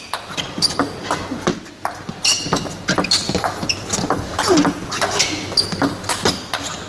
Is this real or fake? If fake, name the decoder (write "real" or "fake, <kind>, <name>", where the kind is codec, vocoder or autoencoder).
real